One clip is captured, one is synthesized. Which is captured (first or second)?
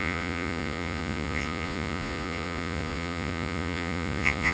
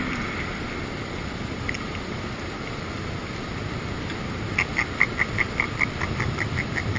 second